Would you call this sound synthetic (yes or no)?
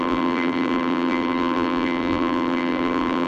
yes